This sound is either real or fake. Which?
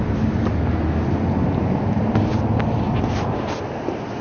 real